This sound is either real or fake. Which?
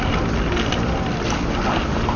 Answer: real